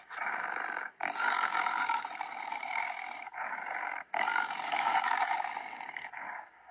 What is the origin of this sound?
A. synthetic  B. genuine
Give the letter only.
A